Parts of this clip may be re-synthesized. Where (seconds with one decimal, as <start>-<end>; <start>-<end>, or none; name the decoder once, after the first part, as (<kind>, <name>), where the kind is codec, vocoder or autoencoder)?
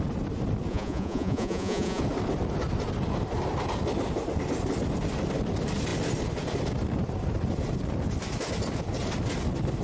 0.7-2.0 (vocoder, Vocos)